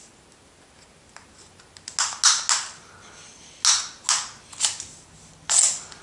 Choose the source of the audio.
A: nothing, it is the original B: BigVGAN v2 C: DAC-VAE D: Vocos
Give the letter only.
A